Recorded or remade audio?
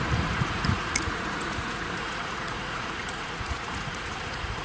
remade